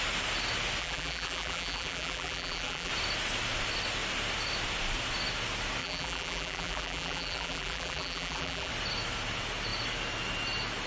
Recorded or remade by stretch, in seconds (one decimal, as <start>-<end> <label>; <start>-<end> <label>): 0.0-0.8 recorded; 0.8-2.9 remade; 2.9-5.8 recorded; 5.8-8.7 remade; 8.7-10.9 recorded